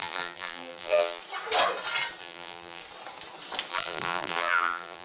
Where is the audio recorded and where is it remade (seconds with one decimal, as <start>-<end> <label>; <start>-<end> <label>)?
0.0-1.2 remade; 1.2-2.2 recorded; 2.2-2.8 remade; 2.8-3.7 recorded; 3.7-5.0 remade